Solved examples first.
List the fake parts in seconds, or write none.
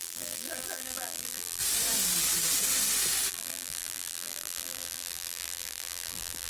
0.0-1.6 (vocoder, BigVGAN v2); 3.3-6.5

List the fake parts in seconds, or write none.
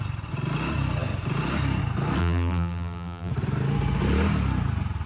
2.2-3.3 (vocoder, BigVGAN v2)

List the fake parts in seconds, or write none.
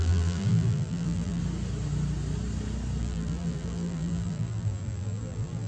0.0-1.4 (vocoder, BigVGAN v2); 3.0-5.7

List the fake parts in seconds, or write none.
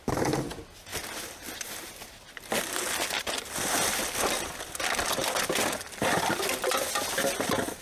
none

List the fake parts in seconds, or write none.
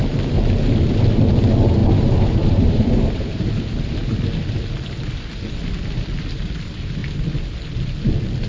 1.8-3.5 (vocoder, BigVGAN v2)